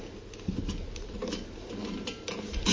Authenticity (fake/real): real